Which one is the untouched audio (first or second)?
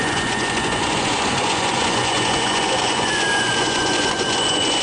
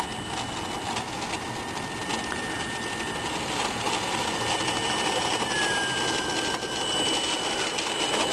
second